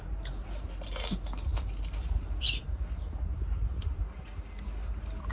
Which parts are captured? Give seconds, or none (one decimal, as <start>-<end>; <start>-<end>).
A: 0.0-5.3